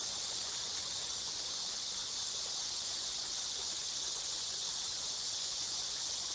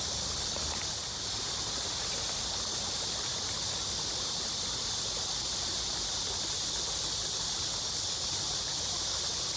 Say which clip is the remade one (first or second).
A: first